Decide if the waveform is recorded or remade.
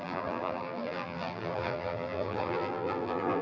remade